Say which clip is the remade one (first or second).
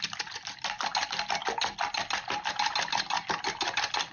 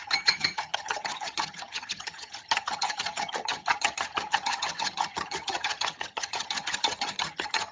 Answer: second